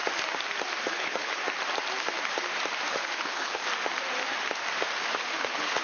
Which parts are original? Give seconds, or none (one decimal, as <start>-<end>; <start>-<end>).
0.0-0.8; 1.4-2.9; 3.6-5.2